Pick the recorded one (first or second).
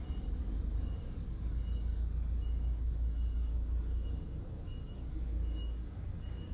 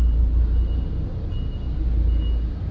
second